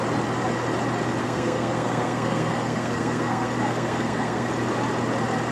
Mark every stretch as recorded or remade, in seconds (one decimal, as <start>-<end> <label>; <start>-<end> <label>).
0.0-1.2 recorded; 1.2-4.5 remade; 4.5-5.5 recorded